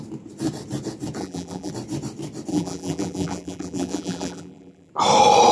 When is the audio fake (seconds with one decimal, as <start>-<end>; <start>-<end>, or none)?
1.2-1.7; 2.5-4.9